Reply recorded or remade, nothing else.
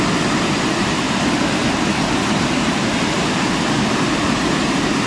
recorded